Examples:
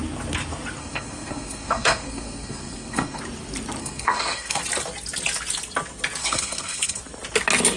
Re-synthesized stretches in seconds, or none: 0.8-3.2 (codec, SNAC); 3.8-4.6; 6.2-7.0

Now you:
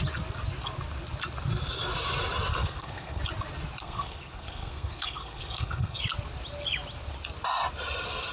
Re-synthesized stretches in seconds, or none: 2.5-3.2 (codec, SNAC); 3.8-6.0

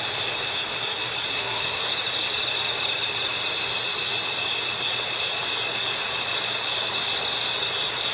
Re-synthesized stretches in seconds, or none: 1.3-1.8 (codec, SNAC)

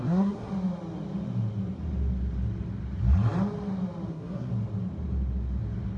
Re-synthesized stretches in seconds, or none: 0.0-0.5 (codec, SNAC); 4.1-4.5

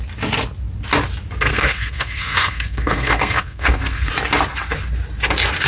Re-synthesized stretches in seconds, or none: 1.5-4.1 (codec, SNAC)

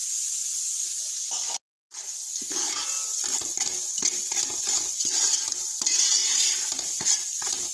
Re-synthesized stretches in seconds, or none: none